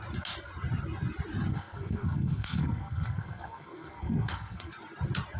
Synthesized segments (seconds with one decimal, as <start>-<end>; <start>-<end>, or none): 1.5-4.7